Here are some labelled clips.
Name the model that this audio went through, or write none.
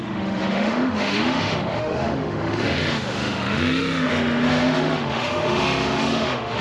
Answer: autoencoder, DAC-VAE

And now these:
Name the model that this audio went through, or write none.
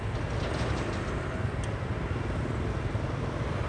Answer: none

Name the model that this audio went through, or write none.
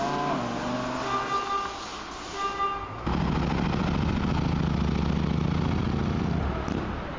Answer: none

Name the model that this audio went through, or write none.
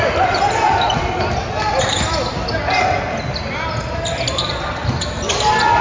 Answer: none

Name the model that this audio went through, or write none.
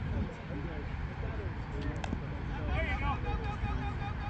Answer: none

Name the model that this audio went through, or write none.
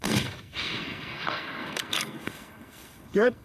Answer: codec, SNAC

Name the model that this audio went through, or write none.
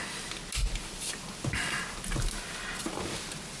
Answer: none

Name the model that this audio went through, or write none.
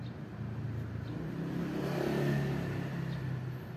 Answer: none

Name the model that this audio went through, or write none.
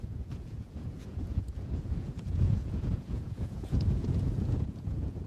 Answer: vocoder, Vocos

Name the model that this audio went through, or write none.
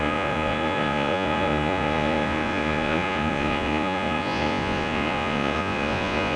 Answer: vocoder, Vocos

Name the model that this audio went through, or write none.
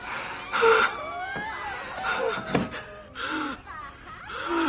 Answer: none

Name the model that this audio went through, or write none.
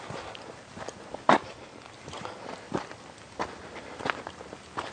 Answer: none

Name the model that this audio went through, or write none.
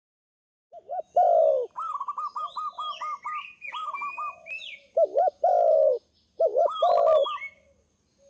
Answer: none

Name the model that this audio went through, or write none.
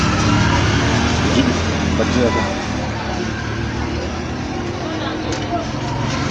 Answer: none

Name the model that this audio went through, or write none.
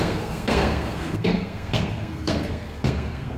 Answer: codec, SNAC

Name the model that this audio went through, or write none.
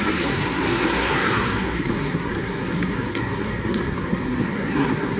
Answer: codec, SNAC